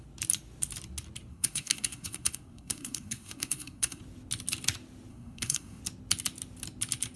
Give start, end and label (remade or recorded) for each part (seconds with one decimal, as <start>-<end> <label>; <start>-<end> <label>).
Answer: 0.0-1.3 recorded; 1.3-4.0 remade; 4.0-5.1 recorded; 5.1-5.8 remade; 5.8-7.2 recorded

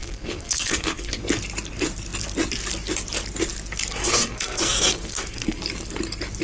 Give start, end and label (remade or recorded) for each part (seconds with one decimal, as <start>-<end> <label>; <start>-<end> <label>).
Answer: 0.0-1.2 remade; 1.2-4.0 recorded; 4.0-5.6 remade; 5.6-6.4 recorded